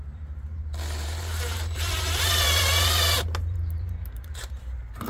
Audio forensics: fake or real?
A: fake